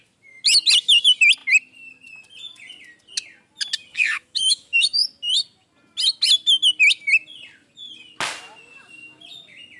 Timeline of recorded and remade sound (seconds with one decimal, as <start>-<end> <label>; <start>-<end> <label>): 0.0-3.9 recorded; 3.9-5.0 remade; 5.0-9.8 recorded